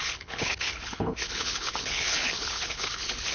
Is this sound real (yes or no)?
no